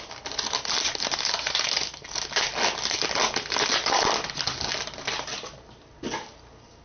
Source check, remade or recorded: recorded